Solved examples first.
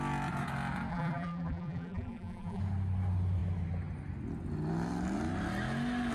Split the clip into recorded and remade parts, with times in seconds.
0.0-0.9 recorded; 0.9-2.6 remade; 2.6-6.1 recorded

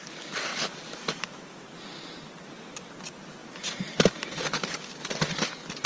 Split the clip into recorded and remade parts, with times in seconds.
0.0-0.5 recorded; 0.5-1.8 remade; 1.8-3.4 recorded; 3.4-4.9 remade; 4.9-5.9 recorded

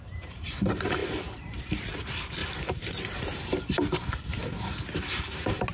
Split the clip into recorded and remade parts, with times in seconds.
0.0-5.7 remade

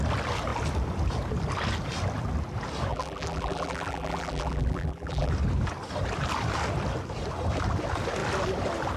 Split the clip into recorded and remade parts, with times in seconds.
0.0-2.9 recorded; 2.9-5.3 remade; 5.3-9.0 recorded

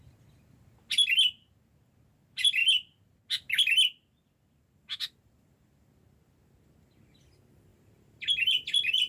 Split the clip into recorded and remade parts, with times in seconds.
0.0-7.7 recorded; 7.7-9.1 remade

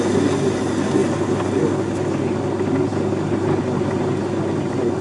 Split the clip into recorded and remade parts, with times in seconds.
0.0-5.0 recorded

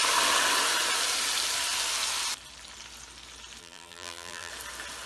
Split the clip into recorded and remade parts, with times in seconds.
0.0-3.6 recorded; 3.6-4.5 remade; 4.5-5.1 recorded

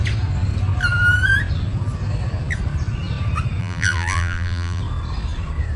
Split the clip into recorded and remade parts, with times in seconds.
0.0-3.6 recorded; 3.6-4.8 remade; 4.8-5.8 recorded